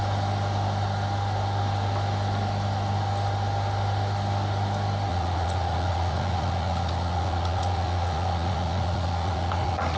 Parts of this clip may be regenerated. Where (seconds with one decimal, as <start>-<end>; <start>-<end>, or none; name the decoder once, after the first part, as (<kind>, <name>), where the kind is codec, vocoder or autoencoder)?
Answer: 5.1-10.0 (vocoder, Vocos)